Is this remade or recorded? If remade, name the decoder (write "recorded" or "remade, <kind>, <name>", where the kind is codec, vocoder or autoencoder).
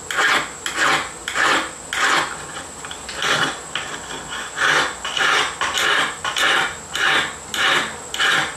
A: recorded